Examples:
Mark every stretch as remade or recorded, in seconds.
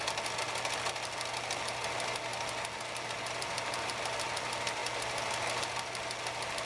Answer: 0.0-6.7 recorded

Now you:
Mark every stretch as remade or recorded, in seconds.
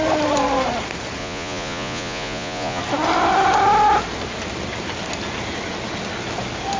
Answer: 0.0-1.2 recorded; 1.2-2.8 remade; 2.8-6.8 recorded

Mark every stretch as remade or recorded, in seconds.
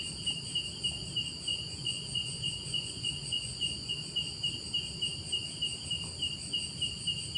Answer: 0.0-1.5 recorded; 1.5-3.9 remade; 3.9-7.4 recorded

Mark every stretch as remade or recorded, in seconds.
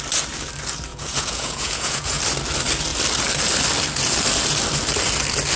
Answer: 0.0-0.9 recorded; 0.9-2.2 remade; 2.2-5.6 recorded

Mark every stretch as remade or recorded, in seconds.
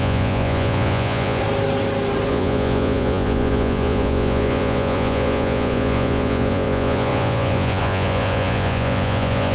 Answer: 0.0-1.4 remade; 1.4-2.3 recorded; 2.3-9.5 remade